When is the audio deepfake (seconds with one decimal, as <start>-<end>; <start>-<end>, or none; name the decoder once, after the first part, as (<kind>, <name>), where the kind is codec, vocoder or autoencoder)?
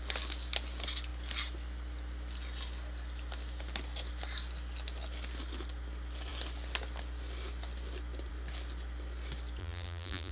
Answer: 9.6-10.3 (vocoder, BigVGAN v2)